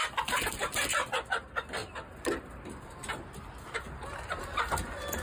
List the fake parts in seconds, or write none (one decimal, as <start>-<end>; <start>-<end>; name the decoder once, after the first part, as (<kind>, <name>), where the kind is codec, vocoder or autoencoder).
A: none